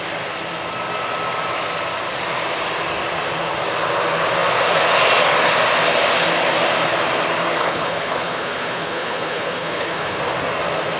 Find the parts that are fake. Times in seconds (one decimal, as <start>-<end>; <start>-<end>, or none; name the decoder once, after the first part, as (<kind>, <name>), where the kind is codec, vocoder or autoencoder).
7.6-10.2 (codec, HILCodec)